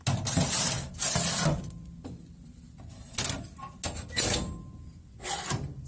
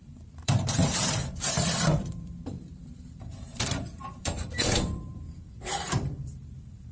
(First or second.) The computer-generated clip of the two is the second